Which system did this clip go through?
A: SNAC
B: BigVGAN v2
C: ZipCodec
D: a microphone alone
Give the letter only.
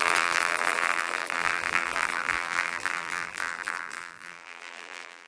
B